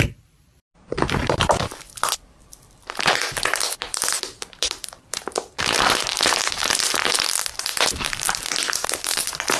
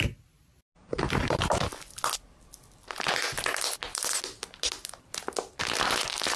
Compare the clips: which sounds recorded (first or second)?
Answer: second